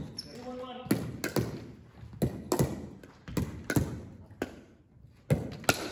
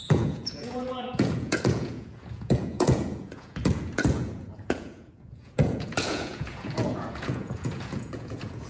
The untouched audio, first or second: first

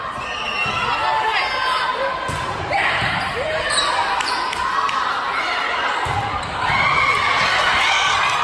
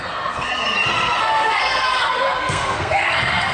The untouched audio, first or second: first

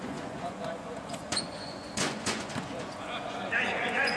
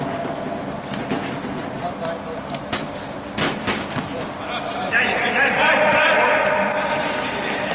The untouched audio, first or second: second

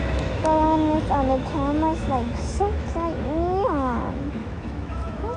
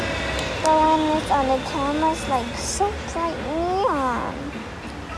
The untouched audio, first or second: second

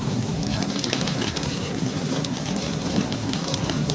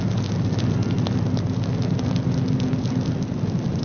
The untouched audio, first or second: second